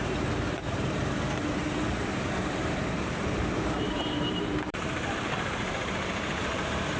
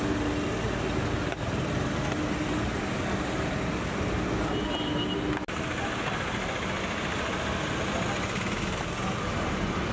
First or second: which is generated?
first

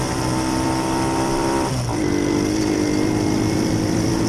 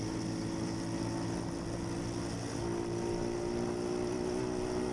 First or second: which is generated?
first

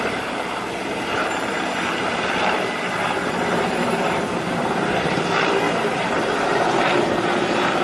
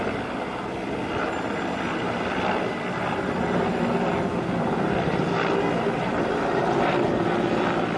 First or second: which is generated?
first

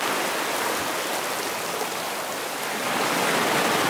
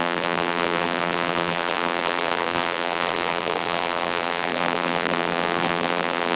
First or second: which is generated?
second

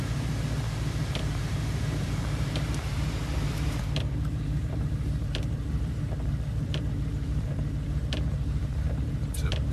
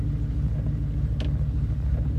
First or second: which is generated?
first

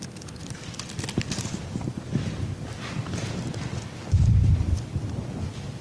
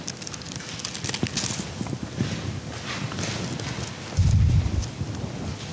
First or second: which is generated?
first